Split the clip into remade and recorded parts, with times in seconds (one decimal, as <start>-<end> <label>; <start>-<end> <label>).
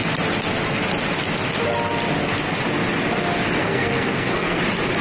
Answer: 0.0-3.6 recorded; 3.6-4.6 remade; 4.6-5.0 recorded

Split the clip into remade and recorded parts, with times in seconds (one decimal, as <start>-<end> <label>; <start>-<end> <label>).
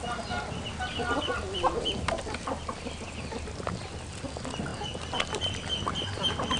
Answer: 0.0-6.6 recorded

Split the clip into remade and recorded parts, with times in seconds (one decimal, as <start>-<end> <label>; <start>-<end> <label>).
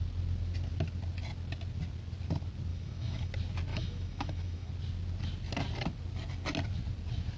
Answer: 0.0-2.7 recorded; 2.7-3.3 remade; 3.3-3.7 recorded; 3.7-4.7 remade; 4.7-7.4 recorded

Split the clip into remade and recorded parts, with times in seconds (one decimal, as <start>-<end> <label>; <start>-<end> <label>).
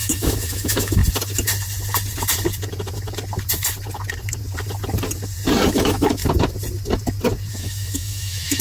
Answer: 0.0-1.0 remade; 1.0-5.7 recorded; 5.7-6.2 remade; 6.2-7.5 recorded; 7.5-8.6 remade